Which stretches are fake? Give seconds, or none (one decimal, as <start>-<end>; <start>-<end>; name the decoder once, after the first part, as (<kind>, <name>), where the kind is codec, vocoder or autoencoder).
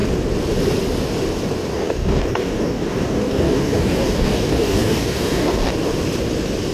1.7-5.7 (codec, DAC)